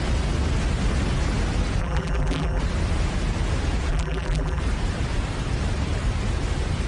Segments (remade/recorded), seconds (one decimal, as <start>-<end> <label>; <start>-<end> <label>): 0.0-1.8 recorded; 1.8-2.6 remade; 2.6-3.9 recorded; 3.9-4.6 remade; 4.6-6.9 recorded